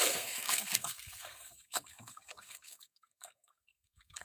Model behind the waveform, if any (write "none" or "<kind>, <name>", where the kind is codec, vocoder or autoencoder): codec, SNAC